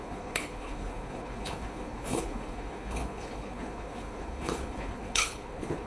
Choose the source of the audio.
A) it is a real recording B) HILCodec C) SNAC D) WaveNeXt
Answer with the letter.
B